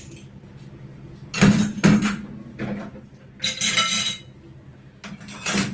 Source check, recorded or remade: recorded